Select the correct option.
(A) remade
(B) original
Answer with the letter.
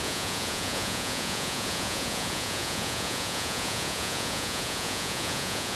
A